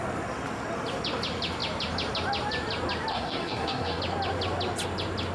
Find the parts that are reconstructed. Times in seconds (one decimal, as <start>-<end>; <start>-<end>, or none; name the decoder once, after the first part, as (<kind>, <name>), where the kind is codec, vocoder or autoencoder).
3.1-4.0 (codec, SNAC)